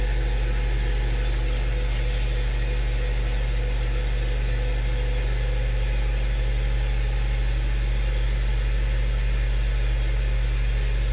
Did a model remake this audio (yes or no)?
no